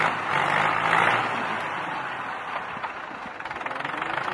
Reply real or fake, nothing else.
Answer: real